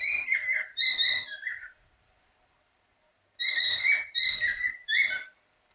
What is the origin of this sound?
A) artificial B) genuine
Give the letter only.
A